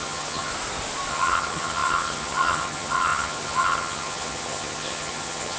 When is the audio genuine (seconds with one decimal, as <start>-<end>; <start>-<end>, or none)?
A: 0.5-1.1